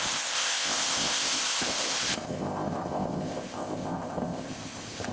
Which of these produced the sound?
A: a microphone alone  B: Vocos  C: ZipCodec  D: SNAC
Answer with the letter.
C